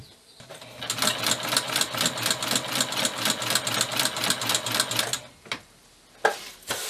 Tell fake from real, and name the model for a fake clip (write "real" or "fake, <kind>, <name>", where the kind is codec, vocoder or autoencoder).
real